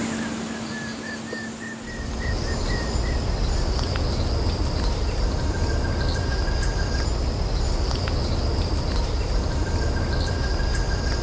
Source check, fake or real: real